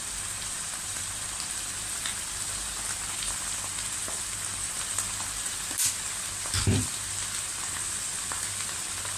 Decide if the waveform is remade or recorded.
recorded